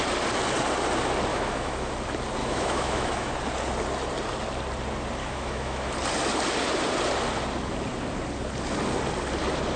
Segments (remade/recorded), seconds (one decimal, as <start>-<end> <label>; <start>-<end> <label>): 0.0-1.3 recorded; 1.3-1.9 remade; 1.9-2.4 recorded; 2.4-3.3 remade; 3.3-5.2 recorded; 5.2-5.9 remade; 5.9-9.8 recorded